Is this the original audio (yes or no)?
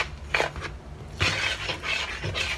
yes